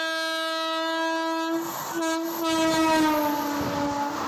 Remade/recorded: recorded